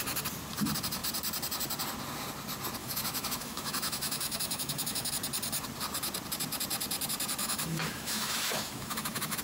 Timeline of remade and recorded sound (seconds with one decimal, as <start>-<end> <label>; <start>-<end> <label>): 0.0-2.8 recorded; 2.8-5.1 remade; 5.1-7.4 recorded; 7.4-9.4 remade